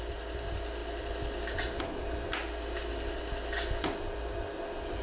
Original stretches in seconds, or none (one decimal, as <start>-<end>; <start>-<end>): 0.0-5.0